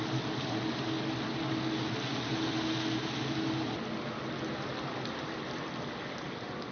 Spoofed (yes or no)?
no